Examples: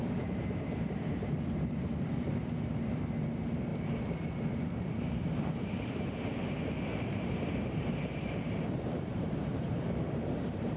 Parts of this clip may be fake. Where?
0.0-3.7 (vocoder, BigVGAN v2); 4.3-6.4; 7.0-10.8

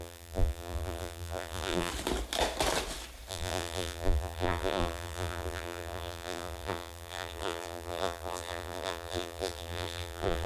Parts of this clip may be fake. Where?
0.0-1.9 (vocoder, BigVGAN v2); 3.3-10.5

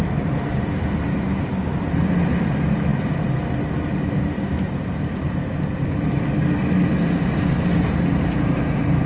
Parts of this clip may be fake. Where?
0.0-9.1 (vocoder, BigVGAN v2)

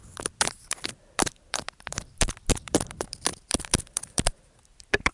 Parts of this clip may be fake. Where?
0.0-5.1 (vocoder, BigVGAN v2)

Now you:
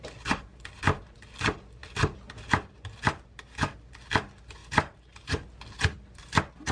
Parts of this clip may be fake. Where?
4.6-5.3 (vocoder, BigVGAN v2)

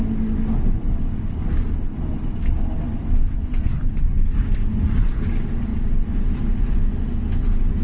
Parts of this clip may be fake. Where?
5.7-6.4 (vocoder, BigVGAN v2)

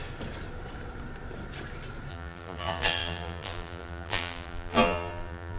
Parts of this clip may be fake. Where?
2.1-5.6 (vocoder, BigVGAN v2)

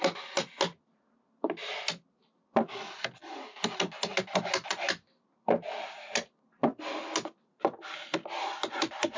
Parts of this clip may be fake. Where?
none